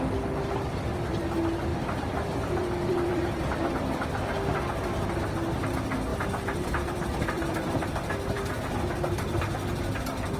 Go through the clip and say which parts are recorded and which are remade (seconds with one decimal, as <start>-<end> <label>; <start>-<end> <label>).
0.0-1.7 recorded; 1.7-3.7 remade; 3.7-6.1 recorded; 6.1-9.4 remade; 9.4-10.4 recorded